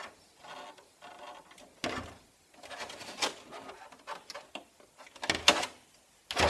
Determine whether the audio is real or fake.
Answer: real